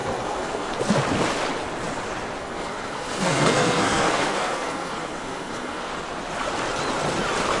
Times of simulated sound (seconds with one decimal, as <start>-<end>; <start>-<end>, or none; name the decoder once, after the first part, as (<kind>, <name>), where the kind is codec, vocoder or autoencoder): 0.0-0.7 (codec, SNAC); 2.4-5.9